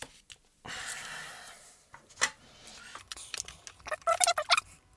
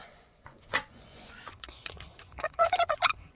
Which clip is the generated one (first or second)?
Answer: second